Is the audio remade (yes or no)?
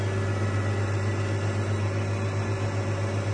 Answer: no